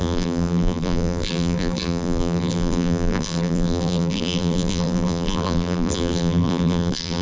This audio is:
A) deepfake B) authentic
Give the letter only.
A